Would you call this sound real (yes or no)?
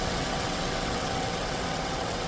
no